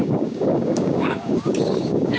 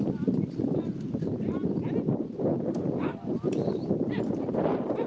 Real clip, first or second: second